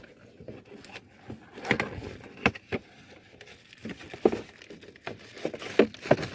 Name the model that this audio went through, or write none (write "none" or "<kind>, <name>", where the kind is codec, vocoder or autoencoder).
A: none